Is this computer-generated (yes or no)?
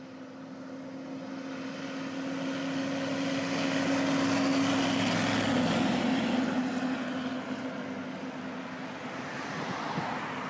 no